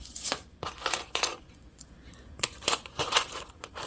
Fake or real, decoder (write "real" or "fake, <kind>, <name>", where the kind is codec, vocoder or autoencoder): fake, vocoder, Vocos